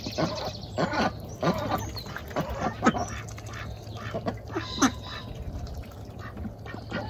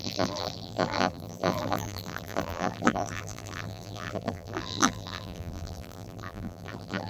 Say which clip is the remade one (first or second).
second